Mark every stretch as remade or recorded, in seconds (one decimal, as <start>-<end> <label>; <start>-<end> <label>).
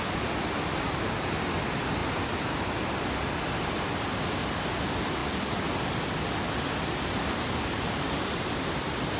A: 0.0-9.2 recorded